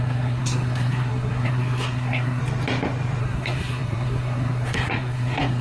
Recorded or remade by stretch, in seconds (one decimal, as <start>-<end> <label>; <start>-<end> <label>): 0.0-2.4 remade; 2.4-3.2 recorded; 3.2-5.6 remade